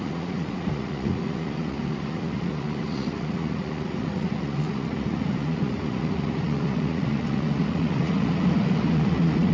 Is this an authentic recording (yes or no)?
no